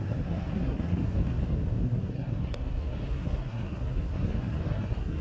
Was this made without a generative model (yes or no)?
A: no